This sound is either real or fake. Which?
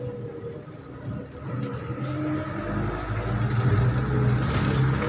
real